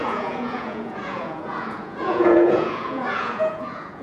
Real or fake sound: fake